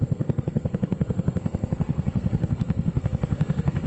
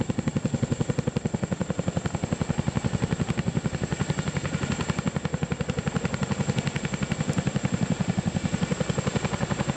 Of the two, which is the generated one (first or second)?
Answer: first